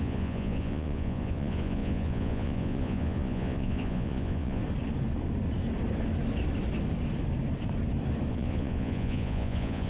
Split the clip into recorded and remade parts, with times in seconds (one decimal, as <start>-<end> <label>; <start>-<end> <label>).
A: 0.0-4.6 remade; 4.6-8.3 recorded; 8.3-9.9 remade